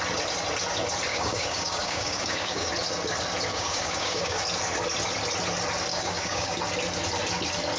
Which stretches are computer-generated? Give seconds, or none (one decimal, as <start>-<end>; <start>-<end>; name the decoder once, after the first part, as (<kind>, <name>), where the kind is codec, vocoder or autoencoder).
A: 1.1-2.7 (codec, DAC); 3.5-4.4; 5.9-6.6